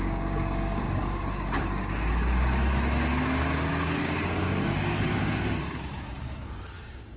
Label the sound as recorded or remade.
remade